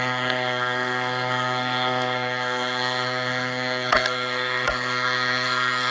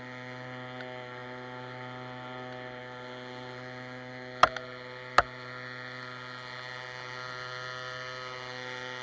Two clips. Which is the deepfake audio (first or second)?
first